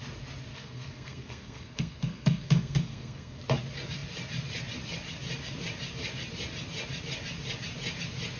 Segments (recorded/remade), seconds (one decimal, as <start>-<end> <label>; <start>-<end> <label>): 0.0-0.5 recorded; 0.5-3.4 remade; 3.4-8.4 recorded